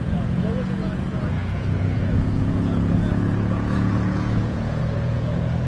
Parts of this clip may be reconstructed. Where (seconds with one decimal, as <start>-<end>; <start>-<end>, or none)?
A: 0.0-5.7